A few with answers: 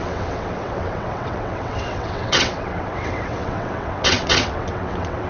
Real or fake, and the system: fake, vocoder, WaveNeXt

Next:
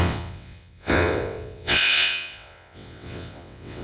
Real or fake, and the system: fake, vocoder, WaveNeXt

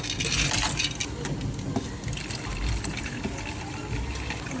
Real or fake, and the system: real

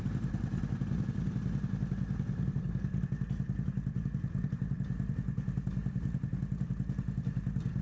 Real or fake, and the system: real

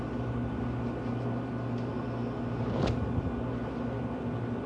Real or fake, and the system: real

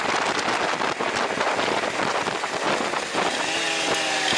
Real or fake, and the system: real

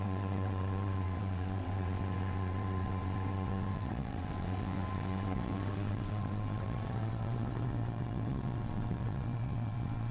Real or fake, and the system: fake, vocoder, WaveNeXt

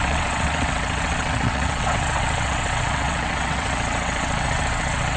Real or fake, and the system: fake, vocoder, WaveNeXt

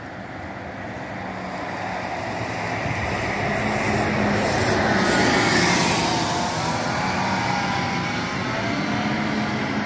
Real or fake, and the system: real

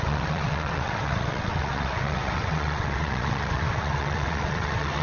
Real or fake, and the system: fake, vocoder, WaveNeXt